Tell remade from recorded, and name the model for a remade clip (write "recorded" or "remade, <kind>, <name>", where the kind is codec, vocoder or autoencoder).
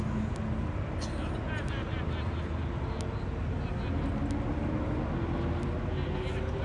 recorded